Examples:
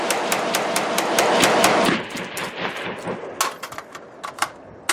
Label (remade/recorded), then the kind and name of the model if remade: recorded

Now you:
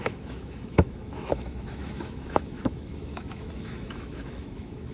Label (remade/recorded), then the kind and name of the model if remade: remade, autoencoder, DAC-VAE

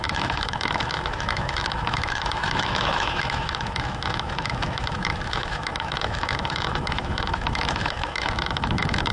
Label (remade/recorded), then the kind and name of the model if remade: remade, autoencoder, DAC-VAE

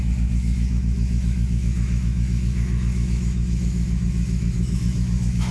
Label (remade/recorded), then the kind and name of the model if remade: remade, autoencoder, DAC-VAE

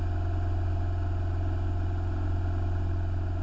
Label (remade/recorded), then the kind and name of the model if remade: recorded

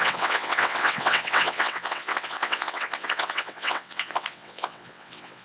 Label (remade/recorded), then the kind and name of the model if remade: remade, vocoder, WaveNeXt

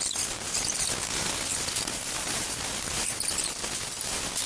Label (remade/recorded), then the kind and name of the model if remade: recorded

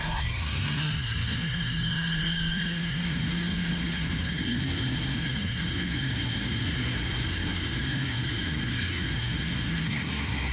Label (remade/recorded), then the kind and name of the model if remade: remade, codec, SNAC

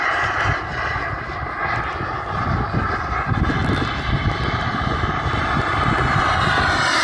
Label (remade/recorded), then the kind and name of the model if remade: recorded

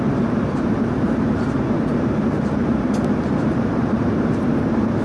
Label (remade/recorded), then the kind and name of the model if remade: remade, vocoder, BigVGAN v2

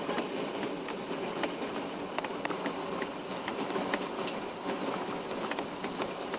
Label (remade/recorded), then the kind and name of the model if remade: recorded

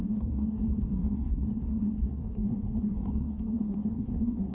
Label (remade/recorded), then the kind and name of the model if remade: remade, codec, SNAC